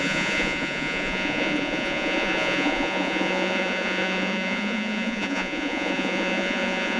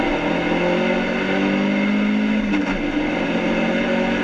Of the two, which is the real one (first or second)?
second